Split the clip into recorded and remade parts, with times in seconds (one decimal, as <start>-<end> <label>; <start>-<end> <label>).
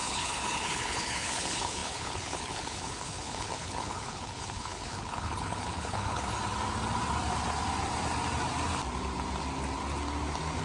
0.0-6.3 remade; 6.3-10.6 recorded